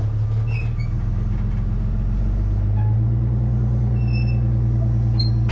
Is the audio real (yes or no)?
yes